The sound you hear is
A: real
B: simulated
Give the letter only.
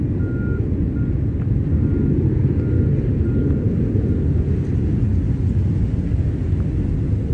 A